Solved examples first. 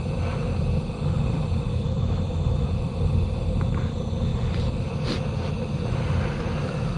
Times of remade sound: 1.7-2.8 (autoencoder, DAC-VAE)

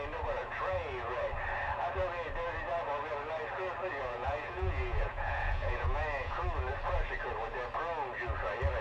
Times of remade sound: 0.4-1.2 (vocoder, Vocos); 3.9-6.4

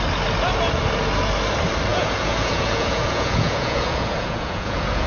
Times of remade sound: 1.9-5.1 (vocoder, Vocos)

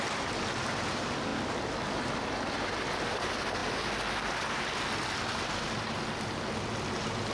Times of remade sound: none

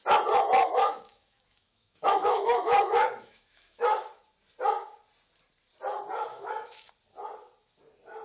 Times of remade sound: 0.6-4.2 (autoencoder, DAC-VAE); 6.3-6.9

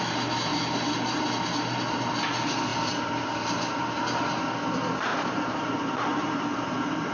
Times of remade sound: 0.5-2.1 (vocoder, BigVGAN v2); 2.7-4.4; 5.1-7.1